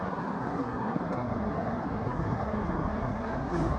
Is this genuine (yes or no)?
no